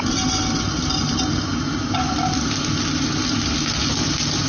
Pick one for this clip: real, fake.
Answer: real